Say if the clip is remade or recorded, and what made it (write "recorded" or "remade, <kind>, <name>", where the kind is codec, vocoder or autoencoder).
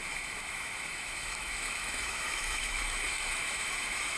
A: remade, autoencoder, DAC-VAE